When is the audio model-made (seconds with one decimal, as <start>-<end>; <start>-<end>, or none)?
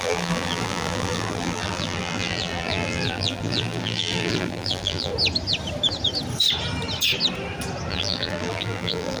0.0-5.1; 7.9-9.2